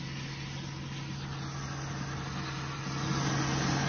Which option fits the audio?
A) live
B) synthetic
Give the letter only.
A